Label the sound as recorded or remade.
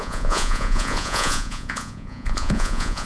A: remade